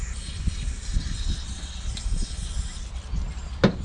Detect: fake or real real